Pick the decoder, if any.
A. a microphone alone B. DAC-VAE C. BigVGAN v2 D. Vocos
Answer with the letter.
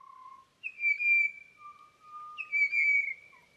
A